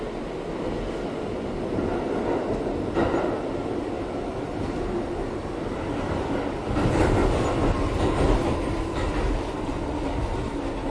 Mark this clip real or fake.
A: real